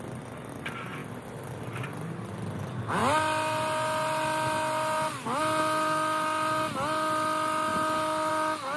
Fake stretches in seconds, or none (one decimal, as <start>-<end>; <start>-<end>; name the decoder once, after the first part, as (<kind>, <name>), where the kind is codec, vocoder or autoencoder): none

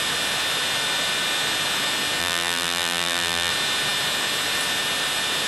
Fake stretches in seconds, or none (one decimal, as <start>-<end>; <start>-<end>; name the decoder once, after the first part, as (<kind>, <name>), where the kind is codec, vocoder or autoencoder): 2.2-3.5 (vocoder, BigVGAN v2)

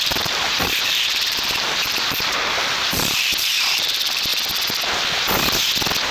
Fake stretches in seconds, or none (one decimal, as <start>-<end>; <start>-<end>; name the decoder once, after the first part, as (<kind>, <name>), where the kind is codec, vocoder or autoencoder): 0.0-4.3 (vocoder, BigVGAN v2)

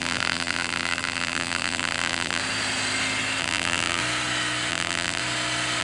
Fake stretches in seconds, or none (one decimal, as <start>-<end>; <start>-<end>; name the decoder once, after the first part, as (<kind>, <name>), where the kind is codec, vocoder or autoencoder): 0.0-2.4 (vocoder, BigVGAN v2); 3.4-4.0; 4.7-5.2